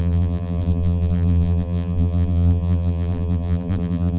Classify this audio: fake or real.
fake